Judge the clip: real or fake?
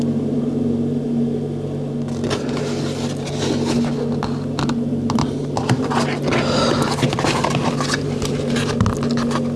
real